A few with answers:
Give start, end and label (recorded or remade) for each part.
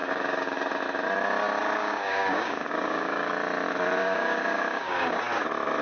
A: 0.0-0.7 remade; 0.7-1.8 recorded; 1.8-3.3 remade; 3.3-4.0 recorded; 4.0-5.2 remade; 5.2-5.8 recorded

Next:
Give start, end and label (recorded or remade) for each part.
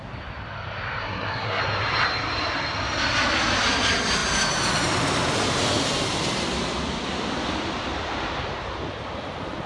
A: 0.0-1.0 recorded; 1.0-1.6 remade; 1.6-9.7 recorded